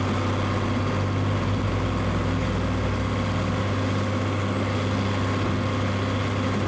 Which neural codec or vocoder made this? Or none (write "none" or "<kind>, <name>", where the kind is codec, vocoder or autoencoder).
none